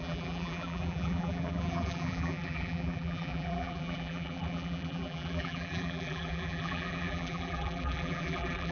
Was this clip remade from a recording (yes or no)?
yes